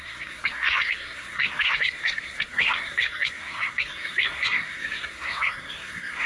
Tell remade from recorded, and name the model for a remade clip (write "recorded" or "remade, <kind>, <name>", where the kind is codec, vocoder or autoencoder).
remade, codec, SNAC